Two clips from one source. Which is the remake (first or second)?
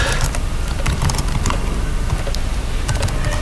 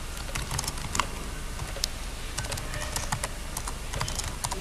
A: first